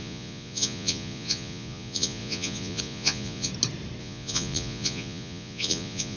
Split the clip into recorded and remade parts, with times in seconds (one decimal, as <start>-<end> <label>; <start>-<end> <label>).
0.0-3.5 remade; 3.5-4.0 recorded; 4.0-6.2 remade